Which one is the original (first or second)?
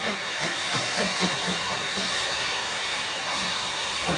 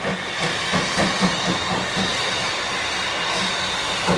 second